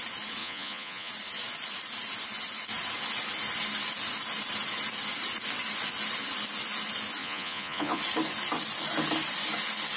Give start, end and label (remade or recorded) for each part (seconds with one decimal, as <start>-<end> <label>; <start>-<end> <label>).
0.0-0.4 recorded; 0.4-1.1 remade; 1.1-7.2 recorded; 7.2-8.0 remade; 8.0-10.0 recorded